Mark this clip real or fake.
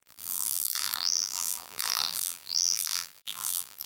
fake